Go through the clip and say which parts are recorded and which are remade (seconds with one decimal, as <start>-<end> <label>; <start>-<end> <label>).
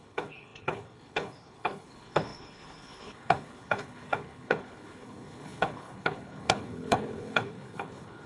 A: 0.0-8.3 remade